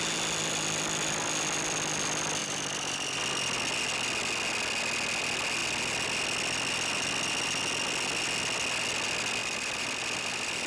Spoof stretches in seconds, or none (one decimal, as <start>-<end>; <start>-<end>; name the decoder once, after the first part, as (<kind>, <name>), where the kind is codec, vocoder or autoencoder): 2.4-3.2 (vocoder, BigVGAN v2); 9.4-10.7